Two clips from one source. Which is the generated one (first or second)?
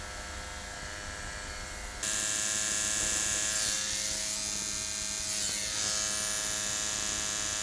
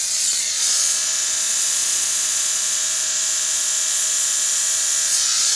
second